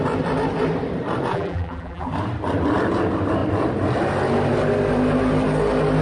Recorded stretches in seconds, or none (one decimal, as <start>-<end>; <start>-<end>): 0.0-1.3; 2.1-6.0